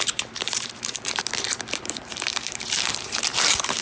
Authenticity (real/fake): fake